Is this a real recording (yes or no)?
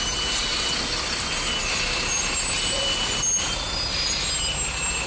yes